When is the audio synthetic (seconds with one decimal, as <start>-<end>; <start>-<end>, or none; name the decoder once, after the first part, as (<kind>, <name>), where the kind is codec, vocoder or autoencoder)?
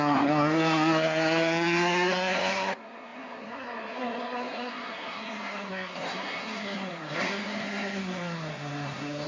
0.0-9.3 (codec, SNAC)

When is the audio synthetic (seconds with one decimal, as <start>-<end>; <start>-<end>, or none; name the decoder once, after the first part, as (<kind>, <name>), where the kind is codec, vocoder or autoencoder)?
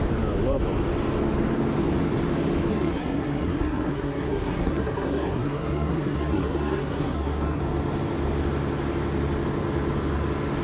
2.7-7.6 (codec, SNAC)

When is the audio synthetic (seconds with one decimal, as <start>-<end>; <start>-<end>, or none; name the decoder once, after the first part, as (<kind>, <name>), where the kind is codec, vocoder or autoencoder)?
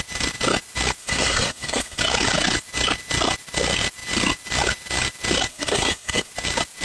1.0-2.0 (codec, SNAC); 5.5-6.3